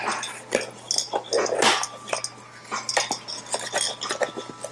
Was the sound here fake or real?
real